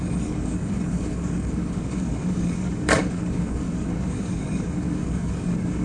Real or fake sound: fake